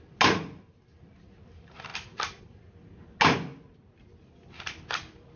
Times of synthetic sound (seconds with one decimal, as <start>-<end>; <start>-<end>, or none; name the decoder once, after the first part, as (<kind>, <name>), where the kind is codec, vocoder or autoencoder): none